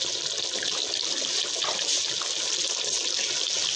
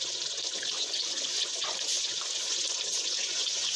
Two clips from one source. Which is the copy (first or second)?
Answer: second